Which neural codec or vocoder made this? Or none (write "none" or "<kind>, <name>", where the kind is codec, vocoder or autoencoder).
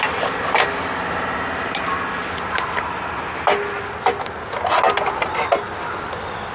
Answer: none